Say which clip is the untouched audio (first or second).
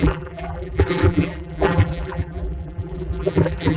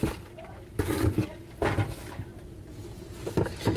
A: second